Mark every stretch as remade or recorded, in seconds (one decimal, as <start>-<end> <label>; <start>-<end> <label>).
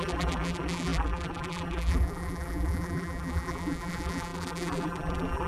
0.0-5.5 remade